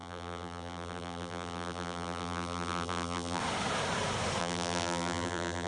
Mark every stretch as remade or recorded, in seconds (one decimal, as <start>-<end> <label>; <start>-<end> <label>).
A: 0.0-3.4 remade; 3.4-4.4 recorded; 4.4-5.7 remade